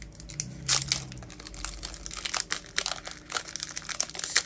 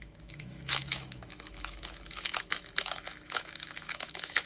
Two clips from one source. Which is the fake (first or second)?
second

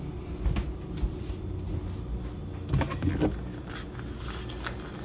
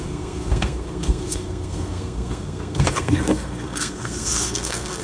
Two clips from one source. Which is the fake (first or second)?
second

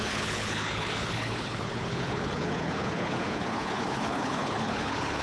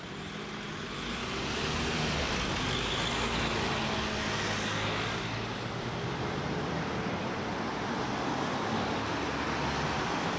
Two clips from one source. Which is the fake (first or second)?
first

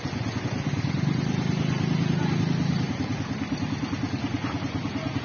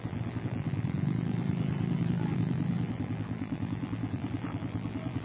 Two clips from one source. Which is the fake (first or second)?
second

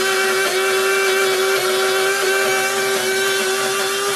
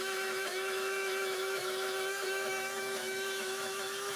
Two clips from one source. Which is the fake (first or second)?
second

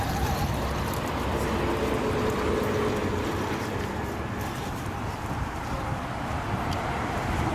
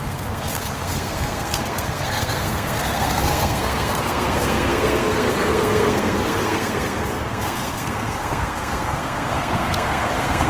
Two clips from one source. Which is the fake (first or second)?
second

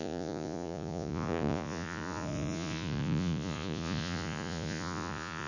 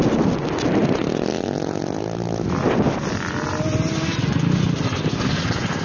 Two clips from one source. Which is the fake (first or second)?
first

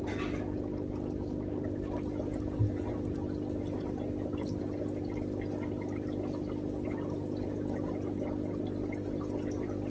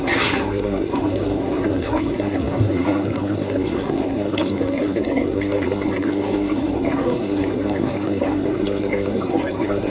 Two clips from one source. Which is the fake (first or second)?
second